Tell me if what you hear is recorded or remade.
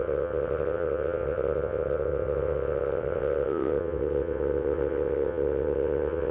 remade